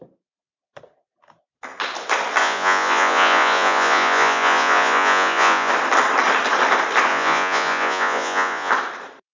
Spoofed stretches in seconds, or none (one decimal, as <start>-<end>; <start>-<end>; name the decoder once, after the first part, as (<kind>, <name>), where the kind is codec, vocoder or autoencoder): 2.4-5.7 (vocoder, Vocos); 7.1-8.7